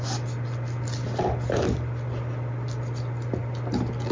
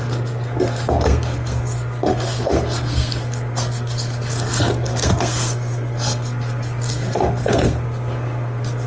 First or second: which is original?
first